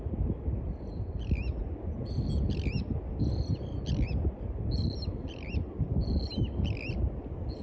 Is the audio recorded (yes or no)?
yes